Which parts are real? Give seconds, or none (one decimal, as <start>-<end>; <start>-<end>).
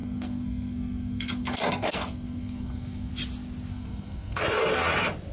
3.1-3.7; 4.4-5.3